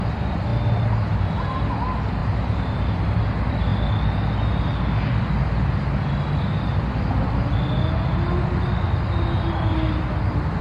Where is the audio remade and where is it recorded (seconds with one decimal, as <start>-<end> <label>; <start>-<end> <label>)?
0.0-2.2 recorded; 2.2-3.2 remade; 3.2-10.6 recorded